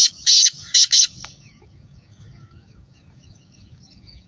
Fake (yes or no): yes